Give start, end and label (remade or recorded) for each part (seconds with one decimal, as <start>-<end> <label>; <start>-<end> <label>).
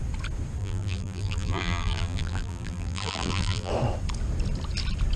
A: 0.0-0.6 recorded; 0.6-3.7 remade; 3.7-5.2 recorded